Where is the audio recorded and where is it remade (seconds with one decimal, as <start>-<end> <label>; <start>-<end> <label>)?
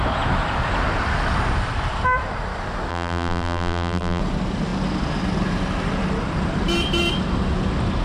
0.0-2.9 recorded; 2.9-4.2 remade; 4.2-8.0 recorded